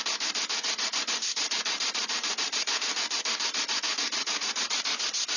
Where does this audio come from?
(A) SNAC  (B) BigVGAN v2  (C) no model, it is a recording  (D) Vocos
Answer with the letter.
C